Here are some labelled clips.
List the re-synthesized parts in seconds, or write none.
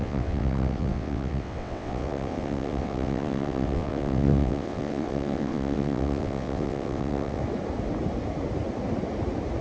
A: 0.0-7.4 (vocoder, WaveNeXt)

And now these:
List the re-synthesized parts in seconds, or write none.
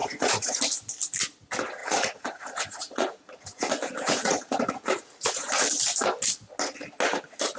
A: 0.0-0.6 (vocoder, Vocos); 1.8-5.5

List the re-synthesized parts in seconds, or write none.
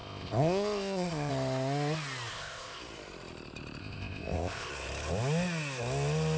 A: 0.0-1.3 (codec, ZipCodec); 2.3-2.8; 3.8-4.7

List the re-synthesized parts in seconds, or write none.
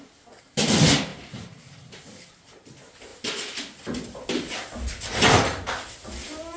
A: none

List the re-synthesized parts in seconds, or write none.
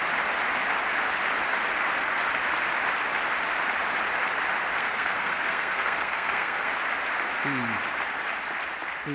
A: 4.8-6.7 (codec, SNAC)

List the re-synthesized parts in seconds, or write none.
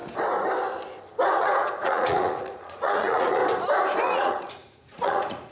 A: 1.4-3.4 (vocoder, Vocos); 4.0-5.5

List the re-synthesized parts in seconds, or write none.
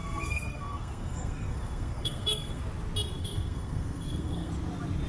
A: 0.0-2.6 (codec, SNAC); 3.2-4.5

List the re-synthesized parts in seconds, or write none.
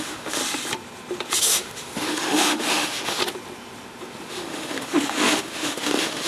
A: 0.0-0.4 (autoencoder, DAC-VAE); 1.4-3.2; 4.3-6.3